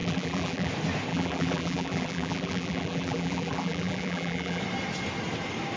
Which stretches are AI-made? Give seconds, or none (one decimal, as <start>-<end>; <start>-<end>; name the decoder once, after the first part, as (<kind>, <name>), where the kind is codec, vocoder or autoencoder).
0.0-0.7 (vocoder, BigVGAN v2); 1.1-4.6